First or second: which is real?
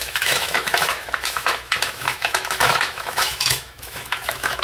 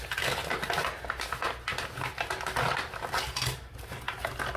second